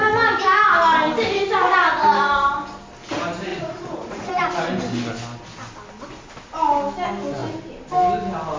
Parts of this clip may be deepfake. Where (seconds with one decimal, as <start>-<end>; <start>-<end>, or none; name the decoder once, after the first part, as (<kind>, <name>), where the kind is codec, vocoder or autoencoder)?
3.5-4.3 (vocoder, Vocos)